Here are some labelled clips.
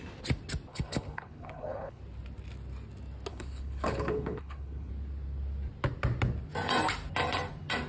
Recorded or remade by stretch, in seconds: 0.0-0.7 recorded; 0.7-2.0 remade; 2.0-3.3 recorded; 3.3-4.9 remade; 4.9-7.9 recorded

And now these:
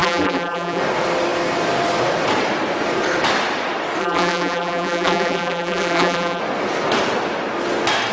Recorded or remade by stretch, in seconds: 0.0-0.8 remade; 0.8-4.0 recorded; 4.0-6.4 remade; 6.4-8.1 recorded

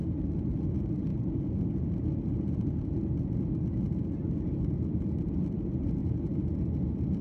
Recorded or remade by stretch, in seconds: 0.0-1.1 remade; 1.1-5.4 recorded; 5.4-6.0 remade; 6.0-6.8 recorded; 6.8-7.2 remade

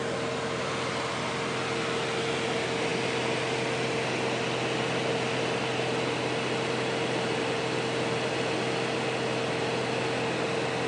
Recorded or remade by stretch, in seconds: 0.0-10.9 recorded

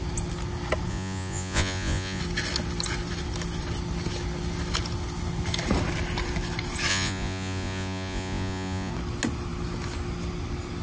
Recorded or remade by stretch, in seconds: 0.0-0.9 recorded; 0.9-2.2 remade; 2.2-6.9 recorded; 6.9-8.9 remade; 8.9-10.8 recorded

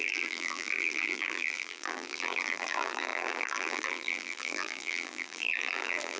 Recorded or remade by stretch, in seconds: 0.0-6.2 remade

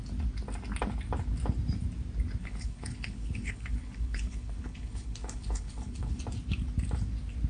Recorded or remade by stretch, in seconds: 0.0-2.4 recorded; 2.4-6.2 remade; 6.2-7.5 recorded

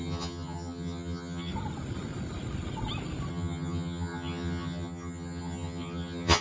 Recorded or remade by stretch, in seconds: 0.0-1.5 remade; 1.5-3.3 recorded; 3.3-6.4 remade